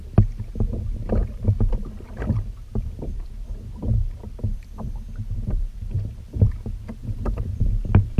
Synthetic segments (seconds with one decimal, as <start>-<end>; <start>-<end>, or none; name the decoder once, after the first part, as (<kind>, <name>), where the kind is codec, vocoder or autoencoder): 1.2-6.1 (vocoder, BigVGAN v2); 7.0-8.2